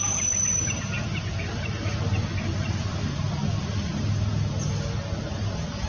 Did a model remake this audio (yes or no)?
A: no